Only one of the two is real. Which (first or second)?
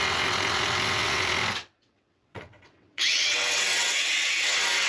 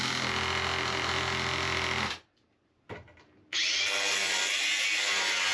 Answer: second